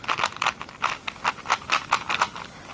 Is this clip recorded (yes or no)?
yes